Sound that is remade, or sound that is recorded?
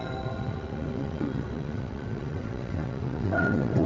remade